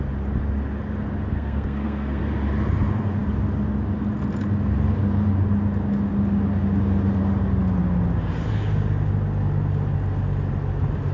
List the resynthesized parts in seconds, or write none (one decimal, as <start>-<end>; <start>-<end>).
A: 1.3-2.2